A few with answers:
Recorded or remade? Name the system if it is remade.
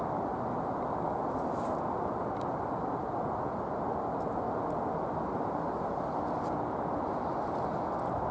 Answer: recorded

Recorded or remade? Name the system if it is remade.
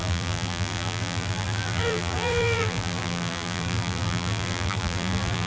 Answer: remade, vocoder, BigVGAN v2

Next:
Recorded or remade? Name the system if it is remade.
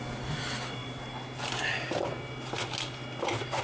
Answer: recorded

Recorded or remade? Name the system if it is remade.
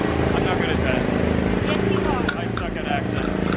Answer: recorded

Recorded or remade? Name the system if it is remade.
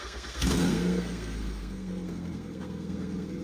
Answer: remade, codec, SNAC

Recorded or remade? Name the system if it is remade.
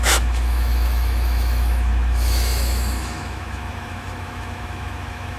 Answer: remade, autoencoder, DAC-VAE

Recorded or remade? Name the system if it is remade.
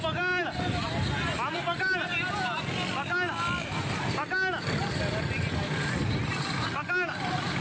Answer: recorded